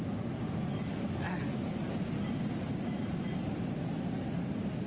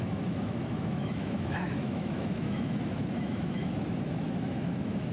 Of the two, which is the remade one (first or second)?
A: second